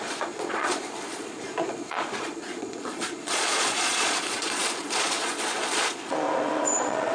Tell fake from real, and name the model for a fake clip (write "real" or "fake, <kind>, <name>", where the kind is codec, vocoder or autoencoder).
fake, vocoder, Vocos